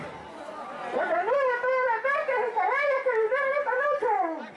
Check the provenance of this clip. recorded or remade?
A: recorded